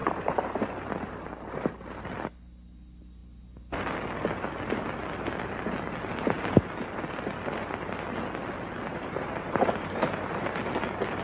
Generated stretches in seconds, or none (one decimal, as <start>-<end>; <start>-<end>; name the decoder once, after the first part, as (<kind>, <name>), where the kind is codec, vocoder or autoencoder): 0.0-0.7 (vocoder, BigVGAN v2); 8.9-10.6